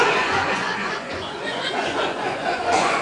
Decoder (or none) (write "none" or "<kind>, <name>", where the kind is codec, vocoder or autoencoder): vocoder, Vocos